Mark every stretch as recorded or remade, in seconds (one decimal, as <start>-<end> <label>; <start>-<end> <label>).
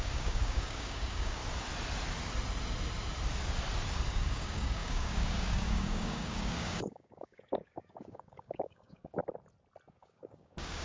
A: 0.0-1.4 remade; 1.4-4.1 recorded; 4.1-9.2 remade; 9.2-9.9 recorded; 9.9-10.8 remade